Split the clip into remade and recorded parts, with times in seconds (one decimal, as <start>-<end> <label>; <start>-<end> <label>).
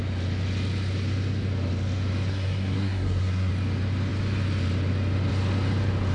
0.0-2.3 recorded; 2.3-3.5 remade; 3.5-6.1 recorded